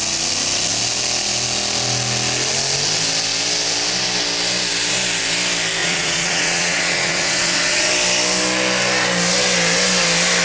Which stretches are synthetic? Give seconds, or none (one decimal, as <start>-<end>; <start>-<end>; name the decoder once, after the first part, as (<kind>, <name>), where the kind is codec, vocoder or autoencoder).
5.8-7.9 (vocoder, Vocos)